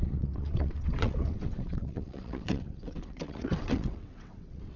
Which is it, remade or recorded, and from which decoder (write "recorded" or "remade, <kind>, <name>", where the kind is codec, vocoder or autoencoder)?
remade, vocoder, WaveNeXt